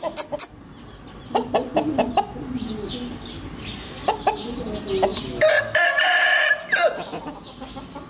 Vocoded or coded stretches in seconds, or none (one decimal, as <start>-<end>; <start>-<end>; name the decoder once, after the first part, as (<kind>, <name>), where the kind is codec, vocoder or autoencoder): none

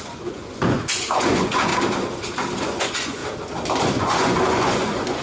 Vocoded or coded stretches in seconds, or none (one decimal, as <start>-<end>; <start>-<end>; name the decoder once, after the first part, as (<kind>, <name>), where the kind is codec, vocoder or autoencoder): 0.0-1.7 (vocoder, Vocos); 2.6-3.2; 3.8-5.2